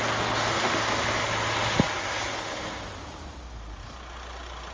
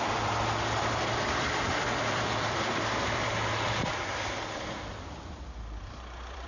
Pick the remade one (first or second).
second